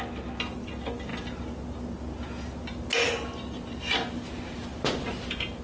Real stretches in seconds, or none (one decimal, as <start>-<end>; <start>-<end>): 0.0-5.6